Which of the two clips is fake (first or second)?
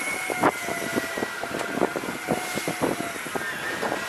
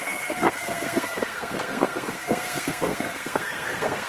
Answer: second